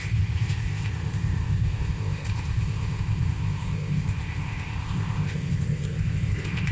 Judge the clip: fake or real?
fake